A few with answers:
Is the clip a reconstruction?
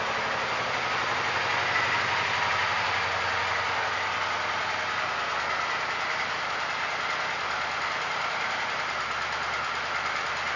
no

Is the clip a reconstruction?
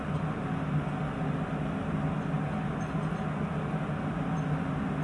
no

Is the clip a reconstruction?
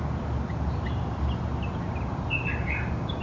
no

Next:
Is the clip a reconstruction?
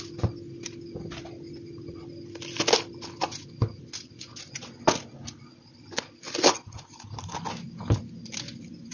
no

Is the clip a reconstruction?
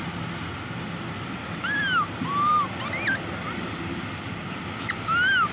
no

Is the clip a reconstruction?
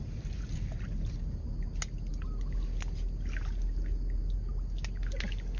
no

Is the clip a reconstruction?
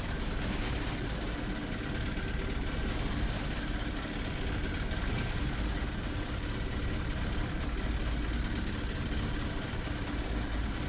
no